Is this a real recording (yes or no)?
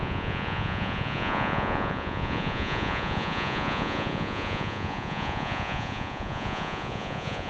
no